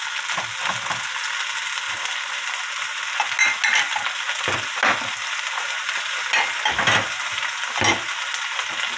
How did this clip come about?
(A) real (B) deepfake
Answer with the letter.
A